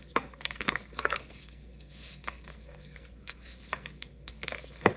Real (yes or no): no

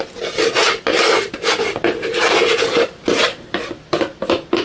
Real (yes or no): yes